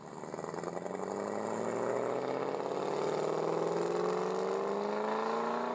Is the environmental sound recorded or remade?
recorded